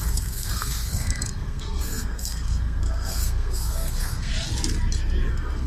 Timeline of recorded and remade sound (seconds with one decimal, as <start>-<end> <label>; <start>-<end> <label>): 0.0-4.3 remade; 4.3-5.3 recorded; 5.3-5.7 remade